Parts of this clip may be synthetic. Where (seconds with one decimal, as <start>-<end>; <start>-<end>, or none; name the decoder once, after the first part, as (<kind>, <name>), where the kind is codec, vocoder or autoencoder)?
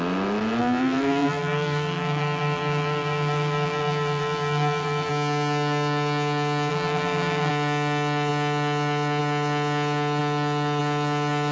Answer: 0.6-5.1 (vocoder, BigVGAN v2); 6.7-7.5